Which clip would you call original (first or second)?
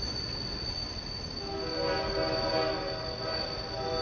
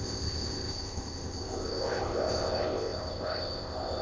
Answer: first